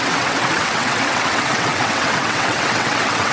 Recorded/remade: remade